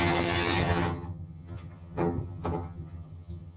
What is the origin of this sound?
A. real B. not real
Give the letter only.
B